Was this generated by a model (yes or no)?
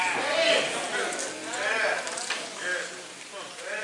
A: no